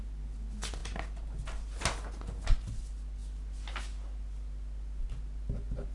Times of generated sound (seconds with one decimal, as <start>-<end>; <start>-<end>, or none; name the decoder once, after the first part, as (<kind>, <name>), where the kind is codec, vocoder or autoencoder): none